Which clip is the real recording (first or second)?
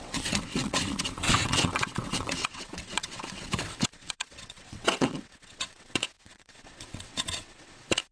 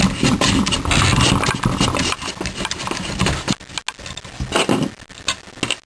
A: second